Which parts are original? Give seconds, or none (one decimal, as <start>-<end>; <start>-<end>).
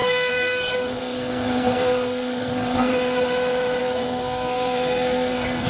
2.9-3.8